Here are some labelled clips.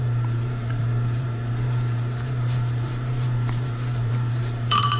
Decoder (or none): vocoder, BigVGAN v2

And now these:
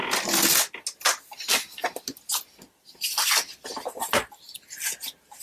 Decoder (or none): none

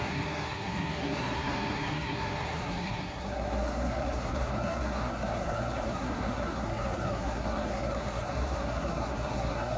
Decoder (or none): codec, SNAC